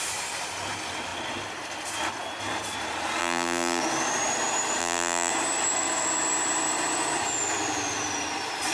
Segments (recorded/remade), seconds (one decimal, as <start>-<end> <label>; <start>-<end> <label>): 0.0-3.2 recorded; 3.2-3.8 remade; 3.8-4.8 recorded; 4.8-5.3 remade; 5.3-8.7 recorded